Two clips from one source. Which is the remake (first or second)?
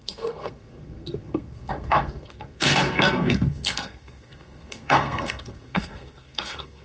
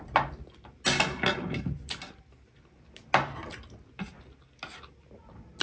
first